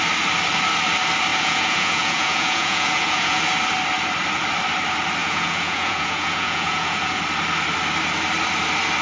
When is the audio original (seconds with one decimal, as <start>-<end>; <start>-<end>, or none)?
0.0-1.3; 3.4-5.2; 7.2-9.0